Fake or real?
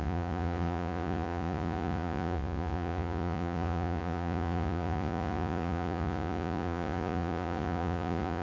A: fake